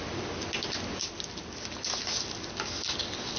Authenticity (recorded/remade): recorded